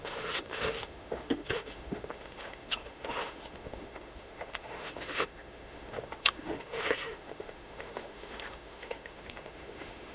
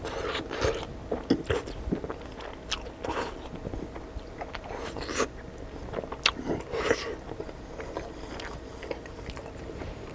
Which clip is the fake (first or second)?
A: first